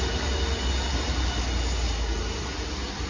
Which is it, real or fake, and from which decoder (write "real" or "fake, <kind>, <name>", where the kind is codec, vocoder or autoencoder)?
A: real